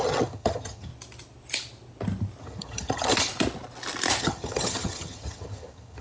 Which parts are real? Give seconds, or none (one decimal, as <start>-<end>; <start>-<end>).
0.9-2.4; 3.3-4.2